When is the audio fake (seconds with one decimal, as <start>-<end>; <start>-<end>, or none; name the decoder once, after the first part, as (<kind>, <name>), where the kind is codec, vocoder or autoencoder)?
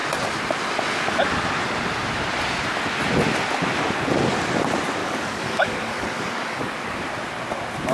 5.0-7.0 (codec, DAC)